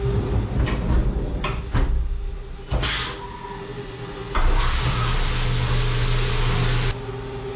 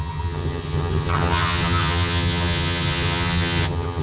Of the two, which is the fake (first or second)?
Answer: second